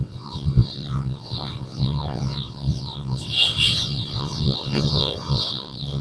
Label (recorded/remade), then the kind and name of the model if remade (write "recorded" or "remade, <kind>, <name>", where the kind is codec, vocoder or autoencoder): remade, vocoder, WaveNeXt